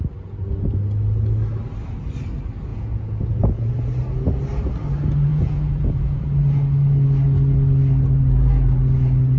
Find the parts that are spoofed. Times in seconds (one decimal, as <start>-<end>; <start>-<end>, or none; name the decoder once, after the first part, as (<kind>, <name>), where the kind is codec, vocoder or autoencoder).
2.7-3.7 (vocoder, Vocos); 5.3-6.2